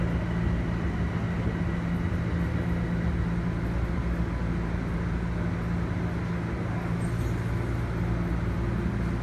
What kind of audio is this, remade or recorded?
recorded